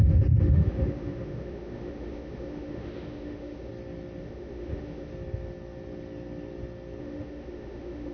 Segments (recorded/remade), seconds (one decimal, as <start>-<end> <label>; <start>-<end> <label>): 0.0-3.7 remade; 3.7-4.2 recorded; 4.2-5.1 remade; 5.1-7.0 recorded; 7.0-8.1 remade